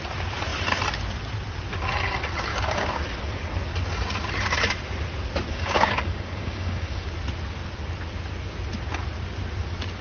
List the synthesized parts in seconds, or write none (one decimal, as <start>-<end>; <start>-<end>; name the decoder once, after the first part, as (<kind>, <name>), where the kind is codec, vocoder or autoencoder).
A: 2.5-3.0 (codec, DAC); 5.5-7.1